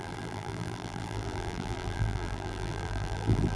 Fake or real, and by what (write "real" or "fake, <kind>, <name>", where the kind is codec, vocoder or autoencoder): fake, vocoder, BigVGAN v2